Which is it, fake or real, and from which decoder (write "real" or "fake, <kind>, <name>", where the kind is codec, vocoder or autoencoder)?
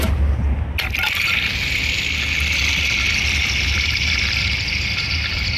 real